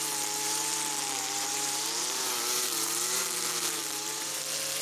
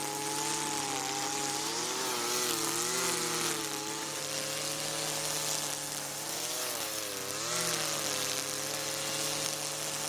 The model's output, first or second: first